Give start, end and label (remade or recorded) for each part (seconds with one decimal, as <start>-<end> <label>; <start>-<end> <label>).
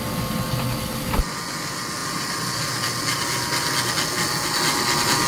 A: 0.0-5.3 recorded